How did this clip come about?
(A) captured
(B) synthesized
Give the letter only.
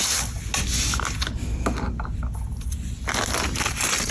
A